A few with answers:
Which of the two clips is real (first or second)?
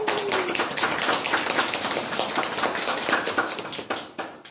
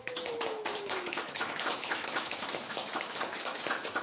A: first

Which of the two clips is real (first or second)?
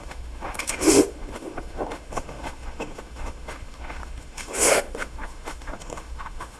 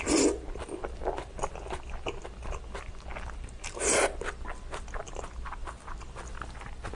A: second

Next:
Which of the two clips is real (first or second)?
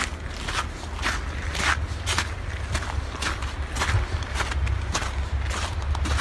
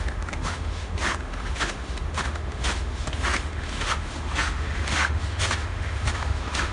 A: first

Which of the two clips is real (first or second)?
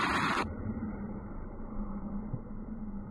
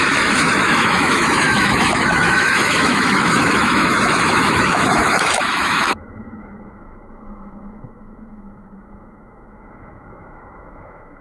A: first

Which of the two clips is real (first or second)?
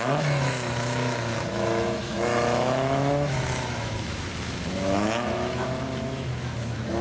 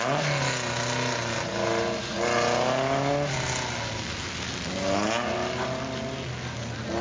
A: second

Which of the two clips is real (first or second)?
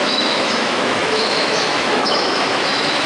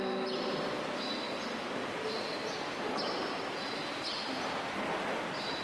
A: second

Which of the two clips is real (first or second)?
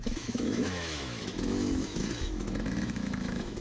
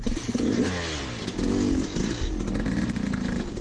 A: second